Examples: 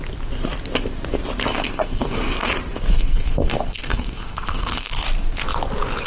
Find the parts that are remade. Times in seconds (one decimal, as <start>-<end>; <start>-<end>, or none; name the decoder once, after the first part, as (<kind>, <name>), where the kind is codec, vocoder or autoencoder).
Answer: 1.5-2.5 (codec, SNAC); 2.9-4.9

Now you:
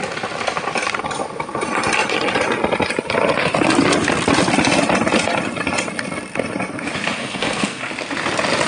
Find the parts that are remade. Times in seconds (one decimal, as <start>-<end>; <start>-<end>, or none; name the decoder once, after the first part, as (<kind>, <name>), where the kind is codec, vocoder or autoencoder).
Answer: 7.2-7.8 (codec, SNAC)

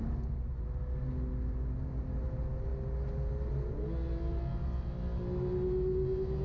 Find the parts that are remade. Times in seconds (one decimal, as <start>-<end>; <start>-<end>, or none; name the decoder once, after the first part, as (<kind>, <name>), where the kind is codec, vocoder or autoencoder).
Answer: none

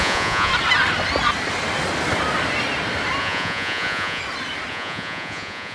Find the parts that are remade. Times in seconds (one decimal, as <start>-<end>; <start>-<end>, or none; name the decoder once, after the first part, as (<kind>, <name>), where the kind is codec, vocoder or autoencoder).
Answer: 0.0-0.5 (vocoder, Vocos); 3.2-4.2; 4.7-5.7